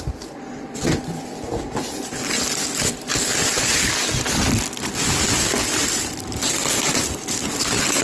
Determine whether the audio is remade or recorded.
recorded